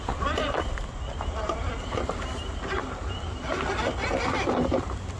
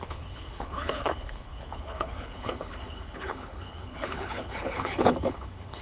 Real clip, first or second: first